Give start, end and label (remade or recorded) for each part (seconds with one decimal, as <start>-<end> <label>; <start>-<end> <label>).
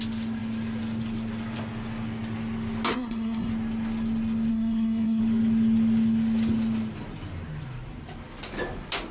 0.0-2.9 recorded; 2.9-3.5 remade; 3.5-4.5 recorded; 4.5-5.2 remade; 5.2-9.1 recorded